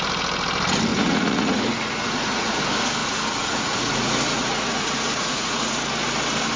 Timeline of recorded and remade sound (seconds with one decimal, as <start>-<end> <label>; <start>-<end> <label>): 0.0-0.9 recorded; 0.9-2.6 remade; 2.6-3.0 recorded; 3.0-5.7 remade; 5.7-6.6 recorded